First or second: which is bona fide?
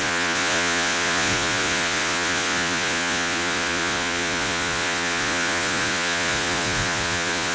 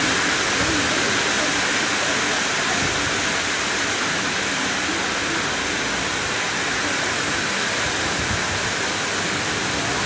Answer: second